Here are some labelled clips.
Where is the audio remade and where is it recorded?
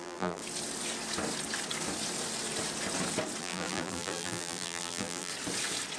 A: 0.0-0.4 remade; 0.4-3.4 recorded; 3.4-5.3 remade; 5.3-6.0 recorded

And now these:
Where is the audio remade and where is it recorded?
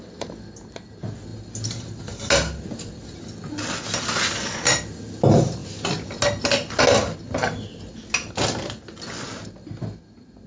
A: 0.0-10.5 recorded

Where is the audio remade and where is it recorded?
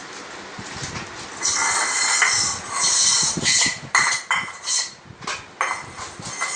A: 0.0-3.1 recorded; 3.1-4.7 remade; 4.7-6.6 recorded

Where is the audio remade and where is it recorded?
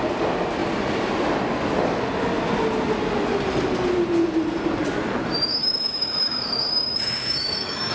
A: 0.0-5.6 recorded; 5.6-7.9 remade